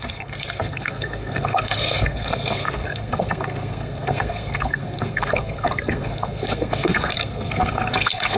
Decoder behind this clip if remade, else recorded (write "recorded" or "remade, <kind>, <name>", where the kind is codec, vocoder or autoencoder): remade, codec, SNAC